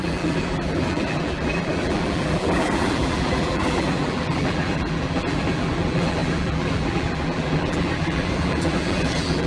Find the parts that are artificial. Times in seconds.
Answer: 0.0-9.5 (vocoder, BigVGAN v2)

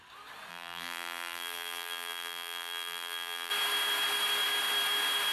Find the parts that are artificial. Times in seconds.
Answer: 0.5-3.5 (vocoder, BigVGAN v2)

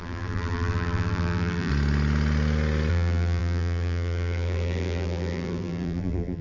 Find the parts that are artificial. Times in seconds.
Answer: 0.0-1.7 (vocoder, BigVGAN v2); 2.9-6.4